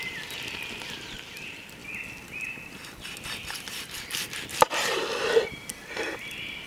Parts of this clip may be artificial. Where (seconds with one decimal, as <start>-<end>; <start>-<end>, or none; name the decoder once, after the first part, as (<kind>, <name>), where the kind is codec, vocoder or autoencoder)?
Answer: 0.0-1.8 (vocoder, BigVGAN v2); 4.0-6.7